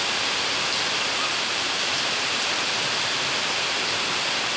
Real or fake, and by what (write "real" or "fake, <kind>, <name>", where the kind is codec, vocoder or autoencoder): fake, vocoder, BigVGAN v2